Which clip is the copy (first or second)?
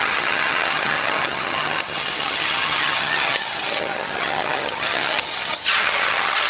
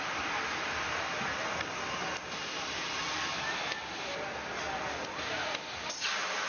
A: first